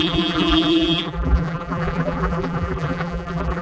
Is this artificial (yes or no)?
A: yes